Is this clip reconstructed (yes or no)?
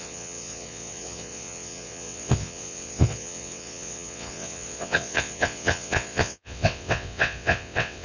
yes